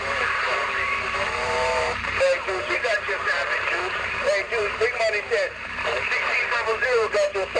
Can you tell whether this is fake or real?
fake